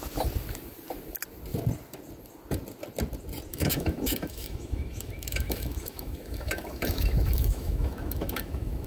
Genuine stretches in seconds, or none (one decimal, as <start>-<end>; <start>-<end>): 0.0-3.5